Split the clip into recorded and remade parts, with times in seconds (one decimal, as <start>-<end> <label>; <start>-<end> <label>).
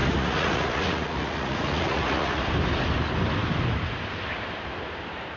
0.0-2.4 remade; 2.4-5.4 recorded